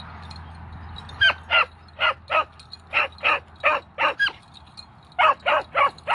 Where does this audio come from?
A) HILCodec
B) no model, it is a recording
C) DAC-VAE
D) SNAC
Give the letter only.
B